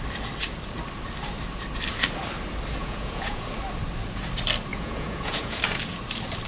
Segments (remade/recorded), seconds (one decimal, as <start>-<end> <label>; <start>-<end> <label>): 0.0-2.8 recorded; 2.8-3.5 remade; 3.5-4.7 recorded; 4.7-5.6 remade; 5.6-6.5 recorded